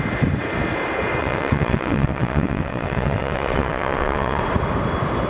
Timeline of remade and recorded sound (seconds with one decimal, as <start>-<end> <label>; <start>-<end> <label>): 0.0-1.2 recorded; 1.2-4.4 remade; 4.4-5.3 recorded